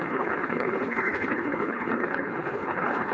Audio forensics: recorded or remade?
remade